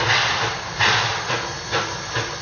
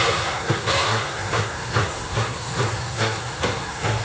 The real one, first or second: first